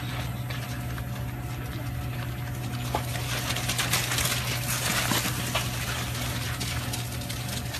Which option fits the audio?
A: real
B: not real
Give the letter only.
A